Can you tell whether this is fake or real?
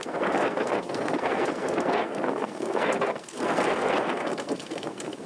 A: fake